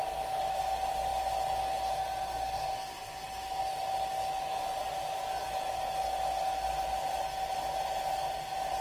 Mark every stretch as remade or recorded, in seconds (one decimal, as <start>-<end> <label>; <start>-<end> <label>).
0.0-8.8 recorded